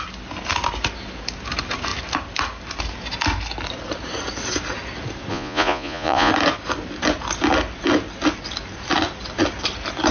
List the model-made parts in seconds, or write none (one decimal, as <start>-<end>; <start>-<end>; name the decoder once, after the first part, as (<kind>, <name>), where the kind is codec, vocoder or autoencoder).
5.3-6.3 (vocoder, Vocos)